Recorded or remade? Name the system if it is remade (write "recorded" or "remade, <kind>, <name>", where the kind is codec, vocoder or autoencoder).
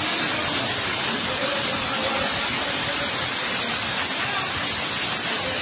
recorded